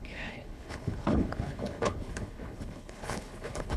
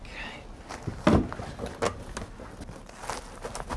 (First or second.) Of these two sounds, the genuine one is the second